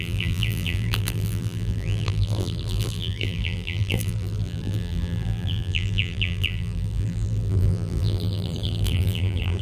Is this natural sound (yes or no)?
no